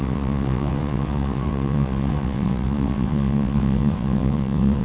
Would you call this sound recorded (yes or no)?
no